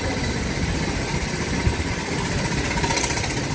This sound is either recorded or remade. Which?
remade